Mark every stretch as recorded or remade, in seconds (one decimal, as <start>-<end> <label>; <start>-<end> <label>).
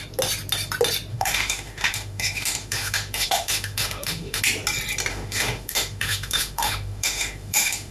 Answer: 0.0-1.1 recorded; 1.1-4.4 remade; 4.4-5.1 recorded; 5.1-7.9 remade